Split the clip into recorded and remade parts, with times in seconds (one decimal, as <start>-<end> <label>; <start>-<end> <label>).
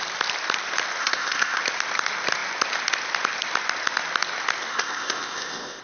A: 0.0-1.0 recorded; 1.0-1.6 remade; 1.6-4.7 recorded; 4.7-5.8 remade